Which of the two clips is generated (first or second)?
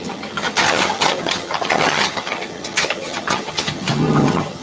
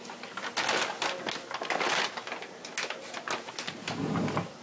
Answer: first